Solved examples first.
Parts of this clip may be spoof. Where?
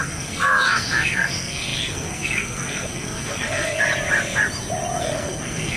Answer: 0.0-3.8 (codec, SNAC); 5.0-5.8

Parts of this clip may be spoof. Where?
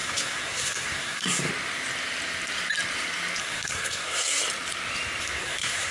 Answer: 0.0-1.5 (codec, SNAC); 3.4-4.4; 5.2-5.9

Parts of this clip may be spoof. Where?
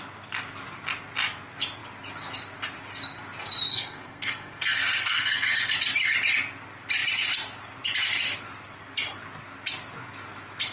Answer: 3.7-5.7 (codec, SNAC)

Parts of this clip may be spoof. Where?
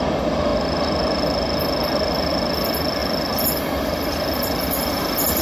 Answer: none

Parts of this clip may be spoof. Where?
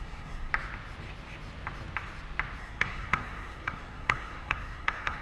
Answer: 0.0-0.5 (codec, SNAC); 2.6-5.2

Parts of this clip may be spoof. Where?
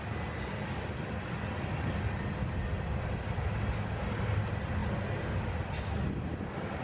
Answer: none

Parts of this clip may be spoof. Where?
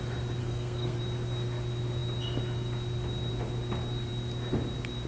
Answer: 0.4-1.0 (codec, SNAC)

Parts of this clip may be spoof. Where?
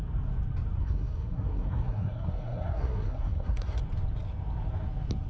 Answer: 0.8-3.8 (codec, SNAC)